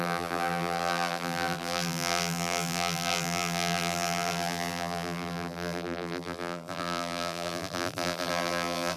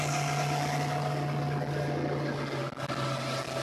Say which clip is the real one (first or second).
second